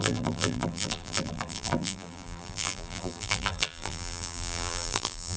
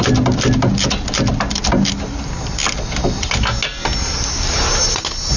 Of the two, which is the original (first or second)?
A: second